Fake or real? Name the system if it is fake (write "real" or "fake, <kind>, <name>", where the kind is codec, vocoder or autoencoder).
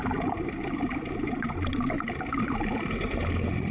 real